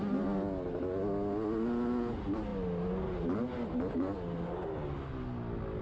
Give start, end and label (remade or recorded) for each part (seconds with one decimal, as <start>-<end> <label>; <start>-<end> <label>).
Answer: 0.0-5.8 recorded